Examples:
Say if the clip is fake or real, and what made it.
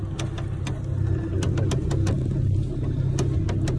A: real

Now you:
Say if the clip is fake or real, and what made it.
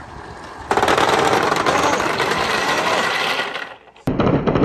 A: fake, vocoder, BigVGAN v2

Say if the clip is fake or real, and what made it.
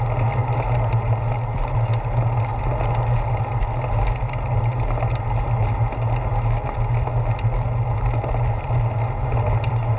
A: real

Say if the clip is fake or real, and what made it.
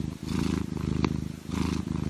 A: real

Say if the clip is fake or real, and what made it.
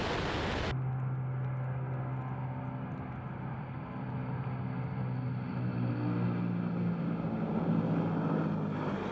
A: real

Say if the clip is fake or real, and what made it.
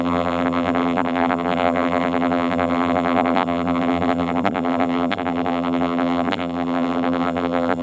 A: fake, vocoder, BigVGAN v2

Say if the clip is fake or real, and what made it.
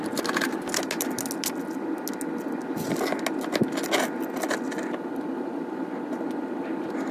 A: real